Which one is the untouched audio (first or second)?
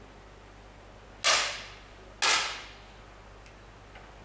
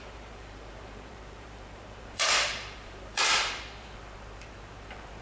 first